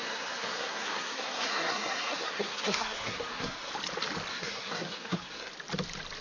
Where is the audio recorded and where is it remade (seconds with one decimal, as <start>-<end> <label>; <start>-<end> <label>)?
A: 0.0-3.7 remade; 3.7-4.3 recorded; 4.3-5.5 remade; 5.5-6.2 recorded